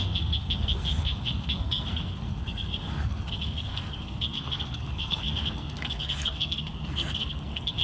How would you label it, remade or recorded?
remade